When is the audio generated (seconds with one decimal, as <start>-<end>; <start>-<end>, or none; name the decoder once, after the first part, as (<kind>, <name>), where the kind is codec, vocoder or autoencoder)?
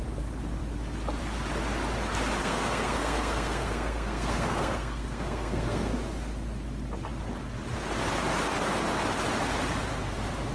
2.4-5.9 (codec, SNAC)